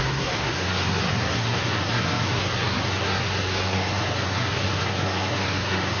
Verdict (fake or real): fake